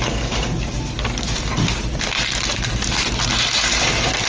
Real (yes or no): yes